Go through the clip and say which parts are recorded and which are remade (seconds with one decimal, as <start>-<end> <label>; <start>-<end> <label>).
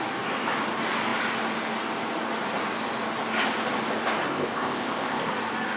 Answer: 0.0-4.3 recorded; 4.3-5.3 remade; 5.3-5.8 recorded